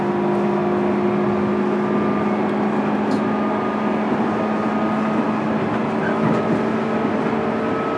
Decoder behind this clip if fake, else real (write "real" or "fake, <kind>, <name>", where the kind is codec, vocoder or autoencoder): real